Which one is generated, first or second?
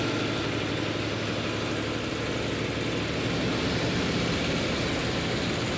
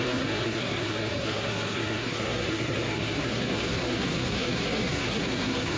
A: second